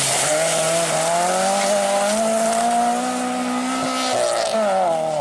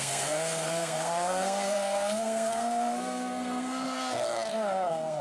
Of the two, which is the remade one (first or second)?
second